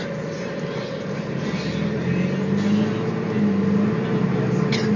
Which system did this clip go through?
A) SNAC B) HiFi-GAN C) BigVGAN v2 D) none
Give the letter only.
D